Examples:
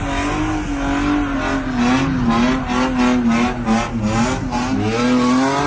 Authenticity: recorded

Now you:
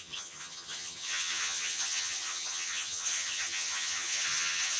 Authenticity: remade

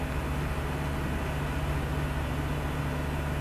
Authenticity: recorded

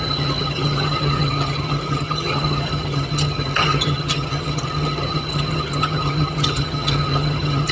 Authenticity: remade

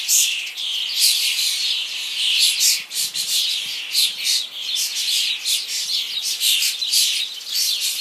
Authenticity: recorded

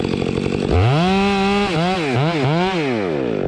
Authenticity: recorded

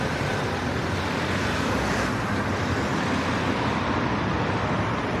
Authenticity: recorded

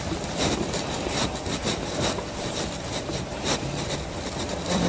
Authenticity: remade